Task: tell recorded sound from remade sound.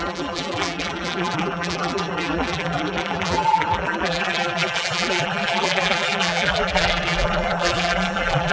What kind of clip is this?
remade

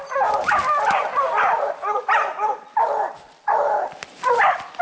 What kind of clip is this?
recorded